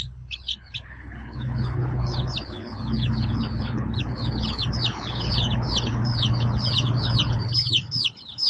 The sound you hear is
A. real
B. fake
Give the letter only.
B